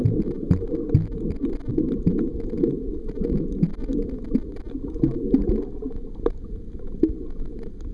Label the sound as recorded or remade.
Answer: recorded